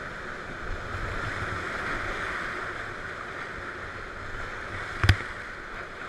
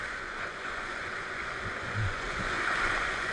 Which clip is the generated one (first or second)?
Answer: second